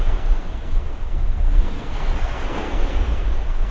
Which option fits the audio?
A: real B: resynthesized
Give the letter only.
B